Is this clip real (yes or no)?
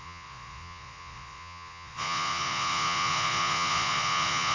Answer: no